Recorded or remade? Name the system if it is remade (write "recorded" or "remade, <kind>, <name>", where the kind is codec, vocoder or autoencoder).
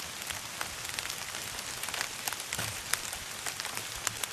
recorded